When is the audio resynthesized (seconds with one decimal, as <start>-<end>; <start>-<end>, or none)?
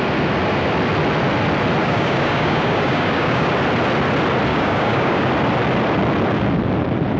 1.8-3.5; 4.5-5.2